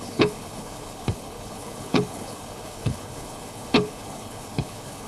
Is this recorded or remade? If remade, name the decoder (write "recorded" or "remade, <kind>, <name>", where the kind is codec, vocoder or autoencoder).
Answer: remade, codec, HILCodec